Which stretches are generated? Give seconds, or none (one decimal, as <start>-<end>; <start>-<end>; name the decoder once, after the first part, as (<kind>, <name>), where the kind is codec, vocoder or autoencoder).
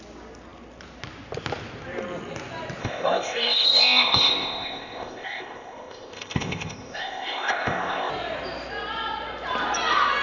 2.8-8.1 (codec, ZipCodec)